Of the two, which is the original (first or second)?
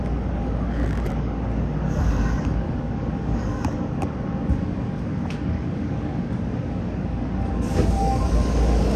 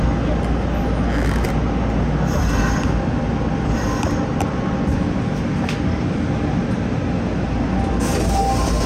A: second